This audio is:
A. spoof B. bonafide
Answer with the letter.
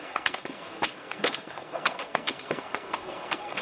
A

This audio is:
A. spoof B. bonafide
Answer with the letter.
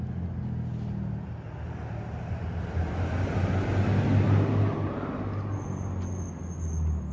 B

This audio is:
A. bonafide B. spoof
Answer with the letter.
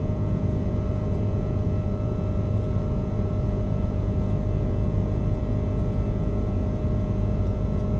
B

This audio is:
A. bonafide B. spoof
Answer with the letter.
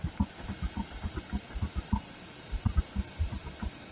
A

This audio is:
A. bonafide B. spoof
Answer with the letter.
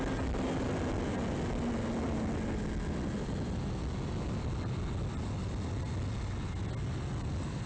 A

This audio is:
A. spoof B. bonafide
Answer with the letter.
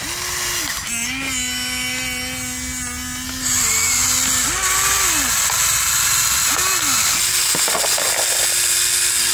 B